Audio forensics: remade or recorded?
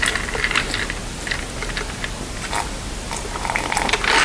recorded